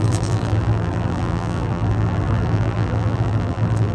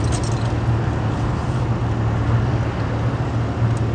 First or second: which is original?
second